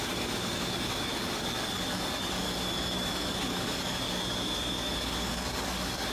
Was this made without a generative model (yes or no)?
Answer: no